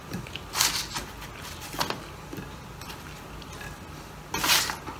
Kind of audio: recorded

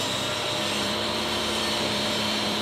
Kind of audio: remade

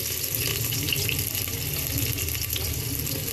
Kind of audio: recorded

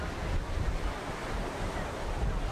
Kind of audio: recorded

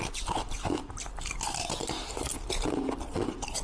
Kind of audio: remade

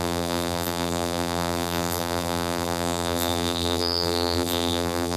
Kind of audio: remade